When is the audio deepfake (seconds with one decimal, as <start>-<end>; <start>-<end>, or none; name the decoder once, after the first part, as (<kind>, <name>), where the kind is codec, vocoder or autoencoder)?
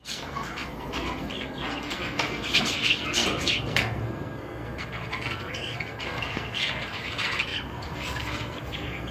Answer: 0.0-9.1 (codec, SNAC)